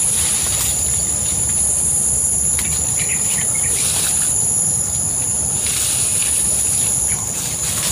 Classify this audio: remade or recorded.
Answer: remade